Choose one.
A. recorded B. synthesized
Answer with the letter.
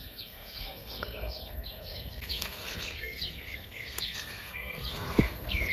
B